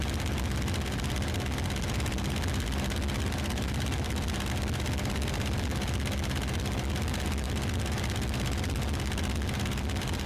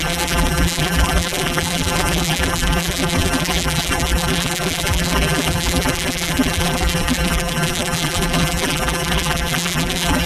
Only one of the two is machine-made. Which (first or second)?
second